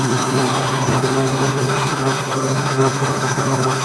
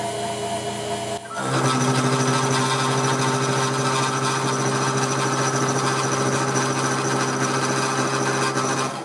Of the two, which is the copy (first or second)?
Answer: first